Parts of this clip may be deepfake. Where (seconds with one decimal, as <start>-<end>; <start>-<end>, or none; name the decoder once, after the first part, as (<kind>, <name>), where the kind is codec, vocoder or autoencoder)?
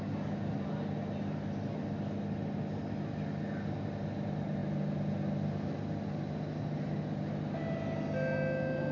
none